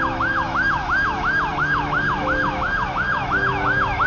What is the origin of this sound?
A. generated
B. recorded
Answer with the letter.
A